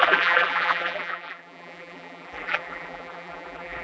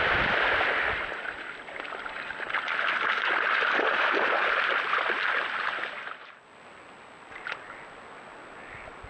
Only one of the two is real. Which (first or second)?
second